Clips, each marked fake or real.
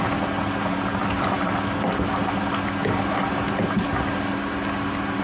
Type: real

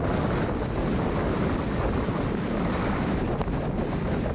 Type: real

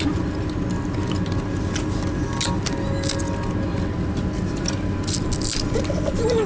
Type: real